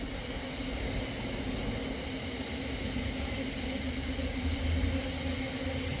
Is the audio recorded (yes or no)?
yes